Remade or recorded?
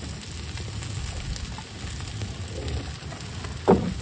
recorded